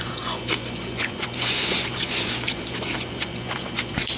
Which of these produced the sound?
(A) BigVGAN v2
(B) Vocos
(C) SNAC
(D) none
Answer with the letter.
B